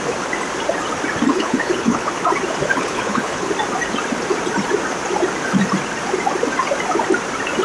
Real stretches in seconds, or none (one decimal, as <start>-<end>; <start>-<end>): 0.0-1.3; 2.1-2.7; 3.5-7.6